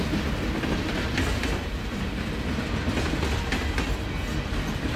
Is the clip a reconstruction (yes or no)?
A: no